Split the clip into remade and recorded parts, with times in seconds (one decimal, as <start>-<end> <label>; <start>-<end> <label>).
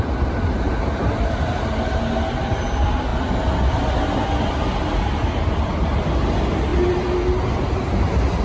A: 0.0-8.4 recorded